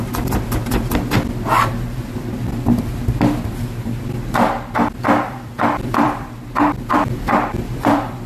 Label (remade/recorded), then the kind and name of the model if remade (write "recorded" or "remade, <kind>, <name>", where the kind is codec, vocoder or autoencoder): remade, vocoder, BigVGAN v2